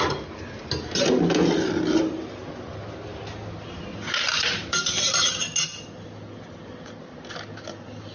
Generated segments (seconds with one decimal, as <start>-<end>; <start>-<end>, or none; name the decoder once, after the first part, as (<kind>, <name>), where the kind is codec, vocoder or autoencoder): none